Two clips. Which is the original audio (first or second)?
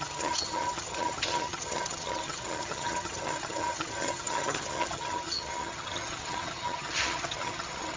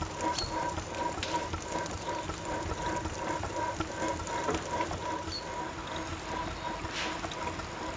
second